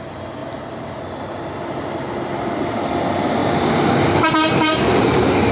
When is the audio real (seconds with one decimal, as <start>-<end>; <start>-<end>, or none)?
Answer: 0.0-5.5